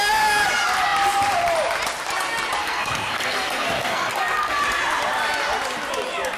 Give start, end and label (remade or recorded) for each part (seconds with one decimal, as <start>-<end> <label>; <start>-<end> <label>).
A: 0.0-2.6 recorded; 2.6-4.6 remade; 4.6-6.4 recorded